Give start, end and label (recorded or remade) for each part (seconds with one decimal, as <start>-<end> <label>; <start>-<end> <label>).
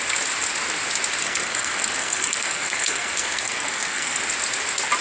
0.0-1.2 recorded; 1.2-4.2 remade; 4.2-5.0 recorded